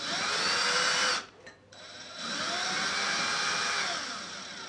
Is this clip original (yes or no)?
yes